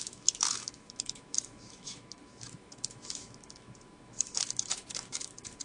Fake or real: fake